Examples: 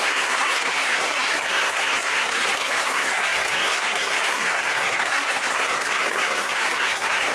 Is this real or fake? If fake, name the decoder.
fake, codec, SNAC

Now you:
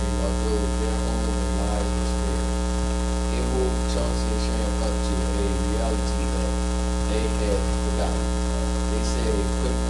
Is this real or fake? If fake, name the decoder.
real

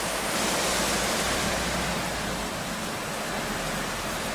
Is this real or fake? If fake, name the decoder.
real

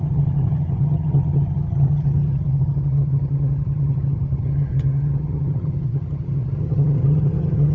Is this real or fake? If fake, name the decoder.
fake, vocoder, HiFi-GAN